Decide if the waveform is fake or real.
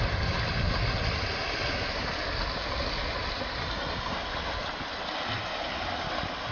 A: real